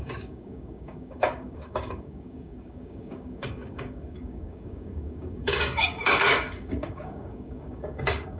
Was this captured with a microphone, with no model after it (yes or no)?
no